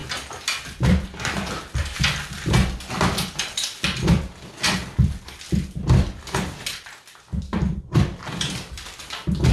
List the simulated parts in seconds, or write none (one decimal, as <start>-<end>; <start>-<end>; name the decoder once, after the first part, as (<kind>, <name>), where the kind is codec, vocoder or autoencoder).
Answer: none